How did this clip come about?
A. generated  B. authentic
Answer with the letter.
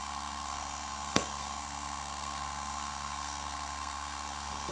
A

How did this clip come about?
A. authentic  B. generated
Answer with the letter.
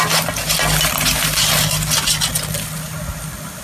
A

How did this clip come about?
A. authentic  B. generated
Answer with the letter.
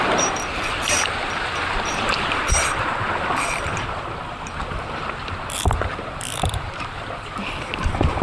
B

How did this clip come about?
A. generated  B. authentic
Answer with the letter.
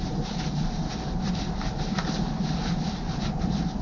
B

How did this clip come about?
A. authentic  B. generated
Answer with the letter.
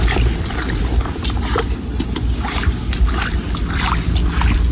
A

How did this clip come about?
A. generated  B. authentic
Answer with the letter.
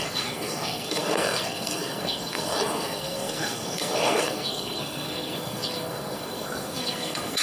A